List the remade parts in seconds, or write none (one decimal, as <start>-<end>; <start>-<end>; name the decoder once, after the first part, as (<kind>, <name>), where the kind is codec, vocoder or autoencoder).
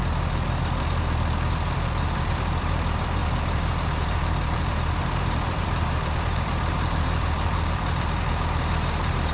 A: 0.0-9.3 (vocoder, BigVGAN v2)